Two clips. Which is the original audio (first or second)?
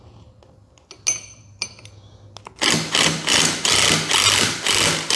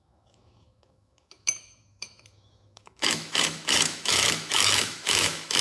first